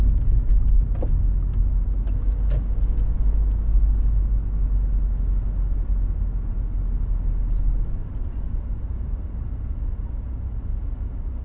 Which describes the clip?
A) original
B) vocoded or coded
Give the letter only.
A